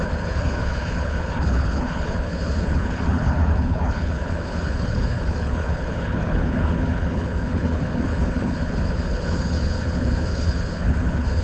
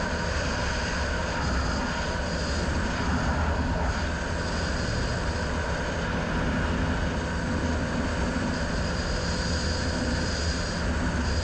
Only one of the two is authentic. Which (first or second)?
second